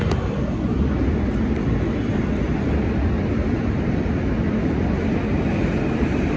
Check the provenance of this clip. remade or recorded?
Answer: recorded